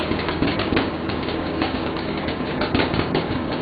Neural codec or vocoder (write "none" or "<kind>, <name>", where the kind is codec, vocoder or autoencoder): codec, DAC